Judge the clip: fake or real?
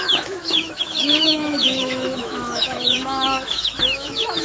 fake